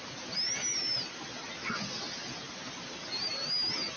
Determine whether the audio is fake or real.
real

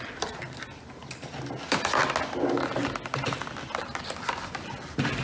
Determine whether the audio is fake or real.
real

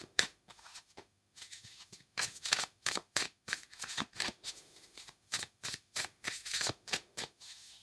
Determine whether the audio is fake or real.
fake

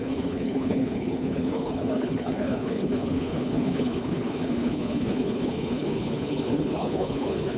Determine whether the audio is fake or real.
fake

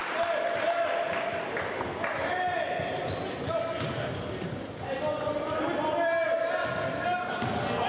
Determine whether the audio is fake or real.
real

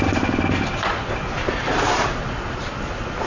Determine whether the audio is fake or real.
real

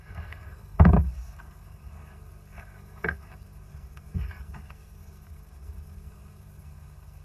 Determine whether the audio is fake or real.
fake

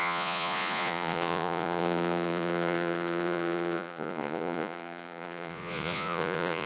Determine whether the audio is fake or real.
fake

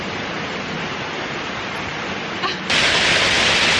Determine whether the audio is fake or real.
real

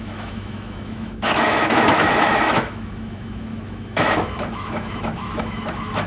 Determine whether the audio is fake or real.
fake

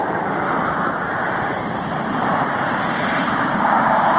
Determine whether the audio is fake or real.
fake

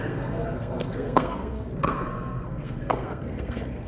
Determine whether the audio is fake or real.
fake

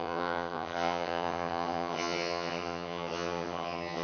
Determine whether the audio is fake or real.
fake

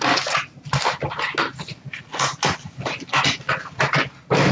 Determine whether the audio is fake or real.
real